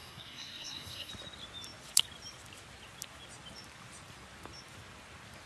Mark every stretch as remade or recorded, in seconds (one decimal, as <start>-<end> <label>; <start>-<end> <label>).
0.0-1.1 remade; 1.1-5.5 recorded